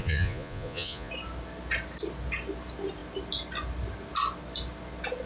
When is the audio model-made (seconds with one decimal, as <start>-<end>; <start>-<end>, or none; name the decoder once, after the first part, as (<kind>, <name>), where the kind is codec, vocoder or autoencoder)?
0.0-1.1 (vocoder, Vocos)